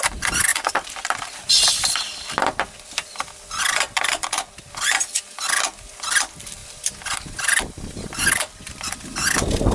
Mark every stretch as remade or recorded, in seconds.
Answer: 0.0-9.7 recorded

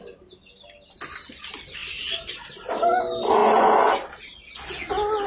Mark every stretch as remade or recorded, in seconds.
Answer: 0.0-3.4 recorded; 3.4-3.9 remade; 3.9-5.3 recorded

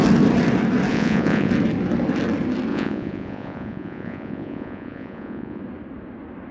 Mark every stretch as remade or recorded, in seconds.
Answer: 0.0-0.9 recorded; 0.9-1.5 remade; 1.5-2.7 recorded; 2.7-5.6 remade; 5.6-6.5 recorded

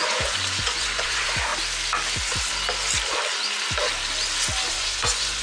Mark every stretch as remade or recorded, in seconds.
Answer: 0.0-1.5 remade; 1.5-4.7 recorded; 4.7-5.4 remade

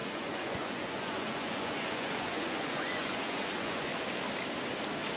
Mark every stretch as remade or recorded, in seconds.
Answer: 0.0-3.9 remade; 3.9-5.2 recorded

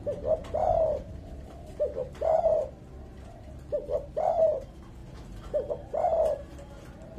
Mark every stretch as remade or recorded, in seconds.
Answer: 0.0-7.2 recorded

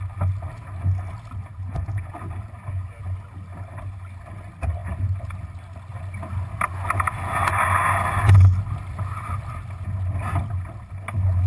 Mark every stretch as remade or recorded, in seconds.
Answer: 0.0-1.5 recorded; 1.5-2.1 remade; 2.1-11.5 recorded

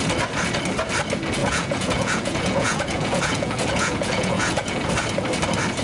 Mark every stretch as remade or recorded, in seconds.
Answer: 0.0-1.4 recorded; 1.4-4.9 remade; 4.9-5.8 recorded